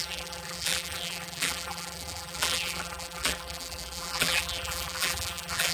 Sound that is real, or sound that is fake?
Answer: fake